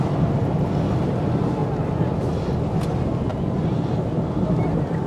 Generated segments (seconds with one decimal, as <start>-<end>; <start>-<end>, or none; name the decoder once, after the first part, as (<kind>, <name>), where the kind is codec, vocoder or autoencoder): none